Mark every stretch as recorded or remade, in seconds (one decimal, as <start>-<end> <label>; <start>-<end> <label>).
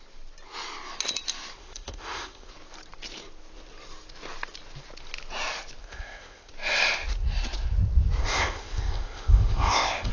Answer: 0.0-1.6 recorded; 1.6-2.5 remade; 2.5-5.8 recorded; 5.8-6.5 remade; 6.5-8.2 recorded; 8.2-10.1 remade